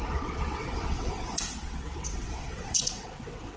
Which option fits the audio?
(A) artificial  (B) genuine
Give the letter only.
A